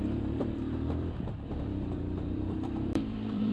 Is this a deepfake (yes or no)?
yes